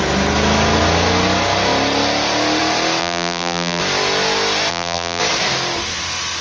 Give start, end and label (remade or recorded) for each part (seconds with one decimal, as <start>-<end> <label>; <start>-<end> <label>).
0.0-3.0 recorded; 3.0-3.8 remade; 3.8-4.7 recorded; 4.7-5.2 remade; 5.2-6.4 recorded